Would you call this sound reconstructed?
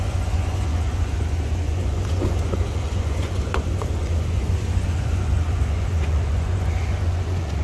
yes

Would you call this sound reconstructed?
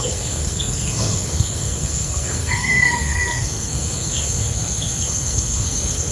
yes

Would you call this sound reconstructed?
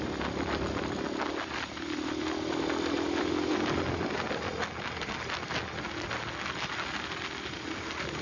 no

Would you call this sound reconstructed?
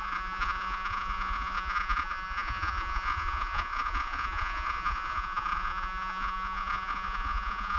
yes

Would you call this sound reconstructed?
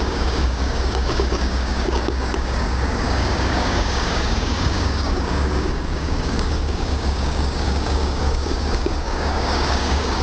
yes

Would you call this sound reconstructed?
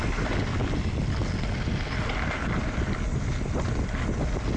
no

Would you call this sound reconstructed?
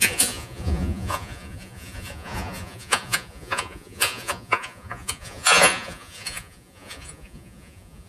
yes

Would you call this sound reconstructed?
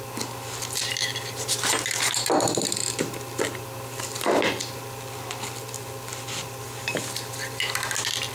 no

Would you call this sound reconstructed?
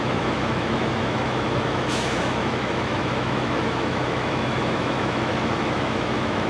yes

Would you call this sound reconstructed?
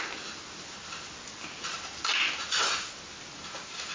no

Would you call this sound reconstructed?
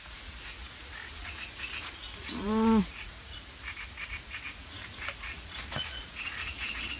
yes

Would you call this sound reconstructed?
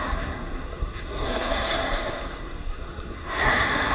yes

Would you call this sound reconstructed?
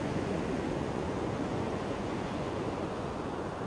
yes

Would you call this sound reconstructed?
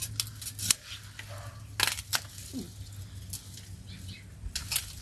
no